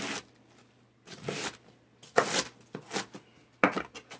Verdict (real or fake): real